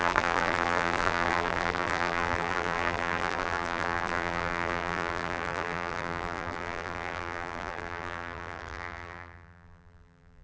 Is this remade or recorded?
remade